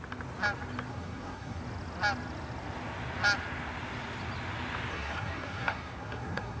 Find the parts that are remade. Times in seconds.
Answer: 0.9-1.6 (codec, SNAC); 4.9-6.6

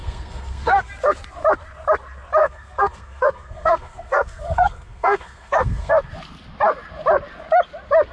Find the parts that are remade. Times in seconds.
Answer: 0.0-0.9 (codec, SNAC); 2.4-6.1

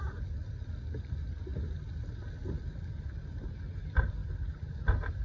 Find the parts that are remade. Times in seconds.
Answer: none